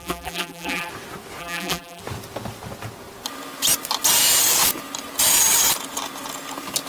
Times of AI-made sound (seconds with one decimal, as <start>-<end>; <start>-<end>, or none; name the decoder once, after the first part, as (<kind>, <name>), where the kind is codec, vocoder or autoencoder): 0.0-0.9 (vocoder, BigVGAN v2); 1.4-2.0